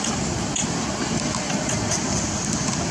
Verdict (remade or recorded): recorded